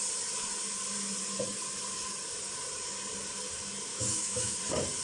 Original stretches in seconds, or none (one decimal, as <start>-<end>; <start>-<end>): 0.0-3.9; 4.6-5.0